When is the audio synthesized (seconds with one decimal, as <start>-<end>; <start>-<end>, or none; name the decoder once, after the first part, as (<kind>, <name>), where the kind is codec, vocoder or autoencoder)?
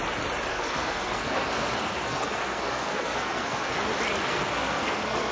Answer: 0.5-3.7 (codec, SNAC); 4.2-5.3